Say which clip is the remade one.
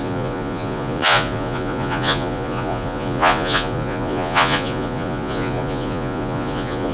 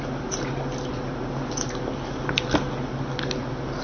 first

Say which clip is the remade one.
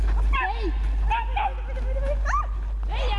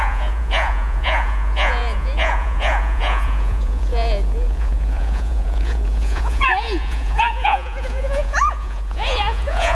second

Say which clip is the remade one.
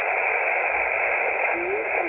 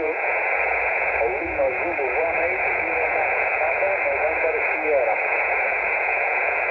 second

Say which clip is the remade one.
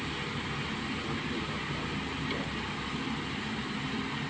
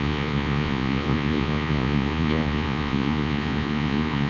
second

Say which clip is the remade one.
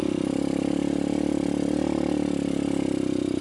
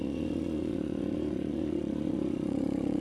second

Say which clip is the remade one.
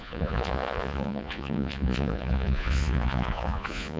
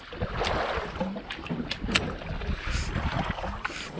first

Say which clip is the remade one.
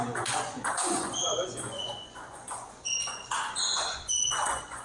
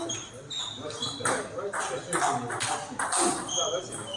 first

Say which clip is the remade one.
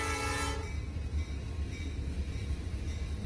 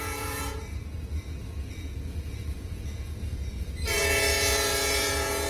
second